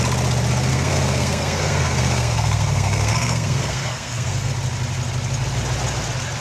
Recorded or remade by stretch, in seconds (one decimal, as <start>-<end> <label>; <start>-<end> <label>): 0.0-0.7 recorded; 0.7-4.5 remade; 4.5-6.4 recorded